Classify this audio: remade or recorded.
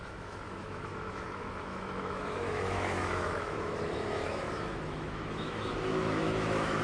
remade